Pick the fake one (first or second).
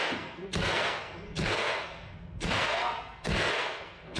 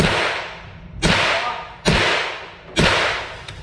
first